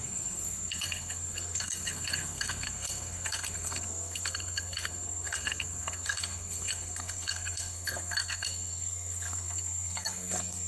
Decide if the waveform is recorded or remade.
remade